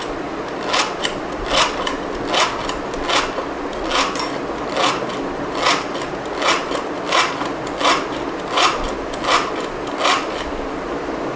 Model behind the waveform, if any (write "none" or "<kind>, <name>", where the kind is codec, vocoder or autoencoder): none